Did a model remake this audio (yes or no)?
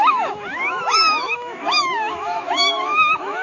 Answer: yes